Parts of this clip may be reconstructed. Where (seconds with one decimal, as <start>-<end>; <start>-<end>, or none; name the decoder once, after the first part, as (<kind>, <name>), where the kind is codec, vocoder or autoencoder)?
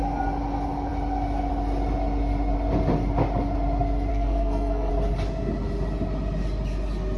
4.1-4.9 (codec, SNAC)